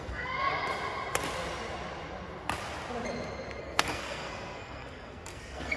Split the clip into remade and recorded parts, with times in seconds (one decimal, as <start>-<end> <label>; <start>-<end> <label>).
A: 0.0-0.4 remade; 0.4-3.6 recorded; 3.6-5.8 remade